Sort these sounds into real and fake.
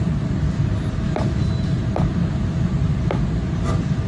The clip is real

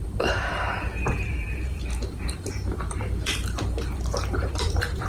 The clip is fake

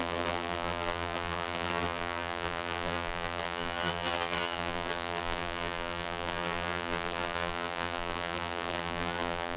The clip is fake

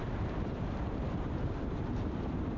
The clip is fake